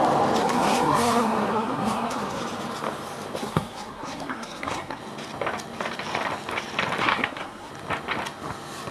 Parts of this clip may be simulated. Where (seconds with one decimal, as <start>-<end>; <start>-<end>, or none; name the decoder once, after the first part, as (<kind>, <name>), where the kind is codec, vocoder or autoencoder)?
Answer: 0.4-2.4 (codec, SNAC); 3.4-5.0; 7.0-7.7